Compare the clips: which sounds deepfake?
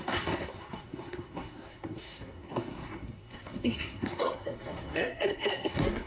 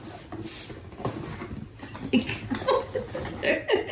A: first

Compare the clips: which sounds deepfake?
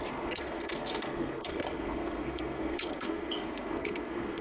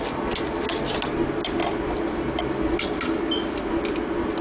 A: first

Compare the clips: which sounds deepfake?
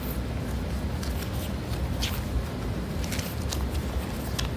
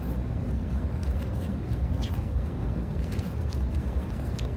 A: second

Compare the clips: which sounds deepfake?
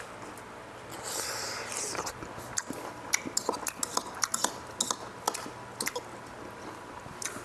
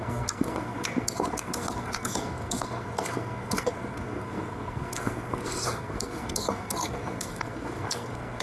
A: second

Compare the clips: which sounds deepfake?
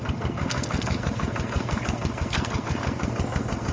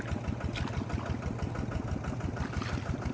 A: first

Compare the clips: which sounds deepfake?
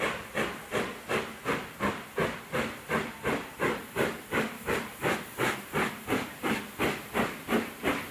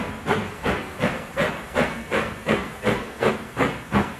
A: second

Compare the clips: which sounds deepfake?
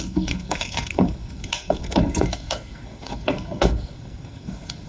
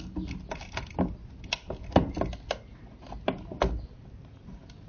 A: first